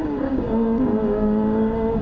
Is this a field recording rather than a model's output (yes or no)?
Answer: no